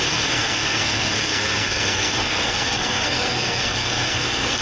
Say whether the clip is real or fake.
fake